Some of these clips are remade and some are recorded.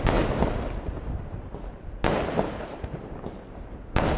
recorded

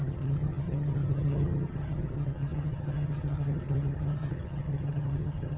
remade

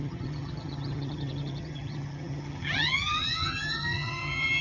remade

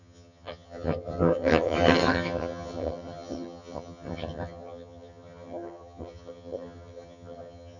remade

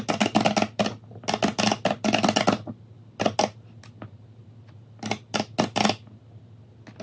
recorded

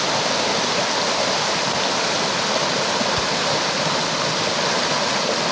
recorded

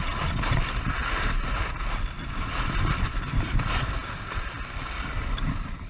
recorded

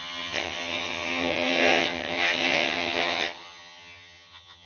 remade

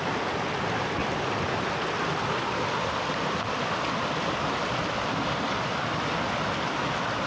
recorded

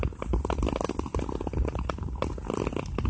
recorded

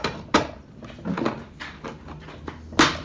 recorded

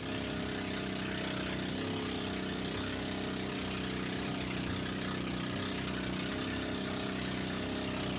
recorded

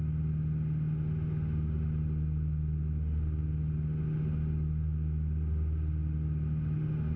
recorded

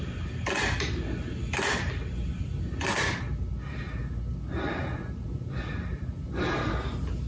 recorded